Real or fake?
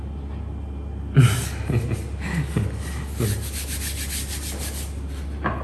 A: real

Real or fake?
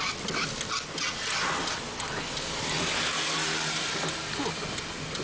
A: real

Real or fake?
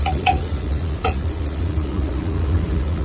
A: fake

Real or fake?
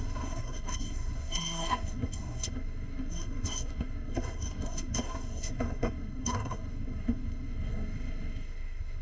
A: fake